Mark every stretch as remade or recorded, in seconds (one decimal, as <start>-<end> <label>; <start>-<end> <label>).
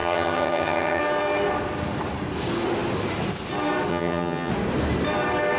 0.0-1.0 remade; 1.0-3.9 recorded; 3.9-4.5 remade; 4.5-5.6 recorded